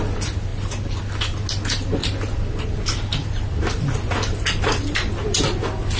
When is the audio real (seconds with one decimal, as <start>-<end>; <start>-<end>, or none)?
0.0-0.5; 1.0-2.0; 5.6-6.0